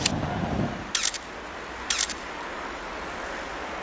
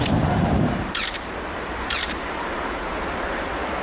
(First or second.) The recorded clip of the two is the first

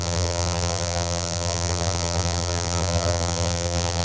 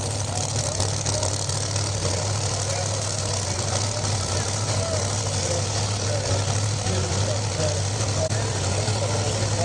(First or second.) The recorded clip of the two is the second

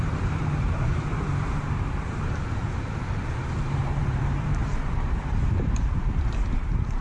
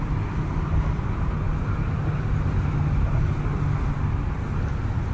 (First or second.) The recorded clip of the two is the second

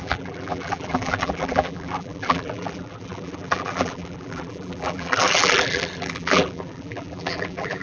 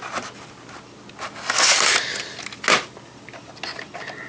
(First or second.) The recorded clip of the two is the second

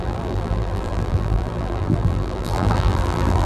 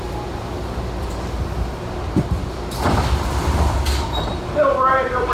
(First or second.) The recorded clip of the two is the second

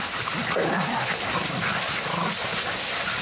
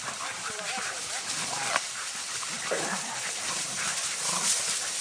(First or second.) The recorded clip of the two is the first